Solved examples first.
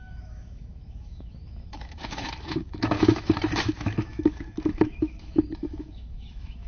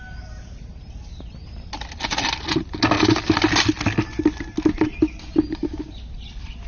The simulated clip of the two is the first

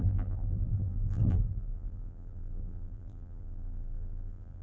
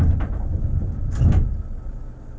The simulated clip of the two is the first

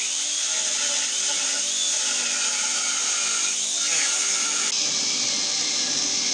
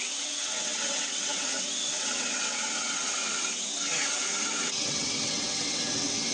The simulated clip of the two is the second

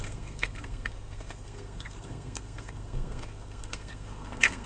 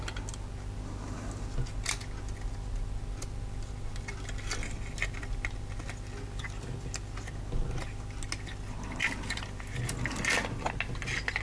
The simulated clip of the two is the first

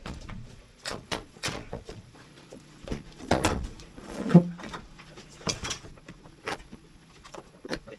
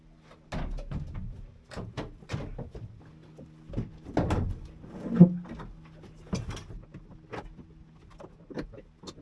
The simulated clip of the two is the first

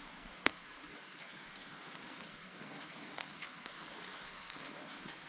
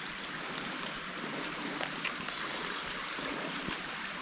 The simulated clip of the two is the first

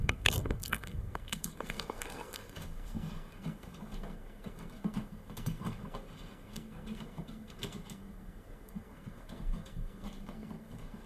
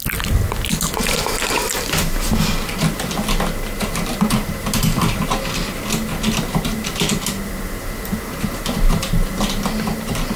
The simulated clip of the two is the first